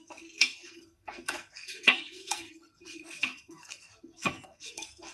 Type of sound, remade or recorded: remade